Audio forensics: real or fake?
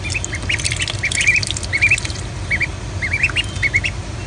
real